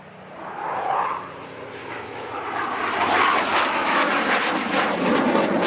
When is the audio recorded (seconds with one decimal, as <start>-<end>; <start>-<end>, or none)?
0.0-1.8; 2.3-3.5; 4.1-5.7

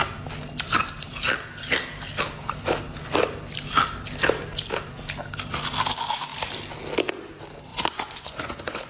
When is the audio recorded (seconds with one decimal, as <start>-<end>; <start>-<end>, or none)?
0.0-7.7

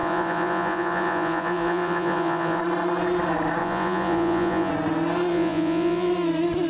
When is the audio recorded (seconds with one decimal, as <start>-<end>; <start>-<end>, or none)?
2.6-3.6; 4.7-5.3; 6.1-6.7